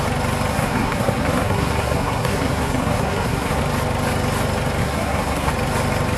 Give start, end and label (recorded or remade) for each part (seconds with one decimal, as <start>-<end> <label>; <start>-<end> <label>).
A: 0.0-0.5 recorded; 0.5-3.6 remade; 3.6-4.8 recorded; 4.8-5.5 remade; 5.5-6.2 recorded